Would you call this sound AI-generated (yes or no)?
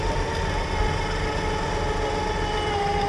no